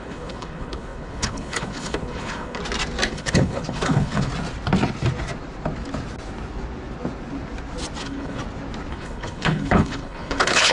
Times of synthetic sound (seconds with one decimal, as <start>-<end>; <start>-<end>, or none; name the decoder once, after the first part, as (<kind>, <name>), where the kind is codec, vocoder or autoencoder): 0.0-2.6 (codec, HILCodec); 3.1-4.3; 8.0-8.4; 8.9-10.7